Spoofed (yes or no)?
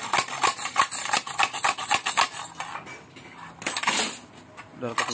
no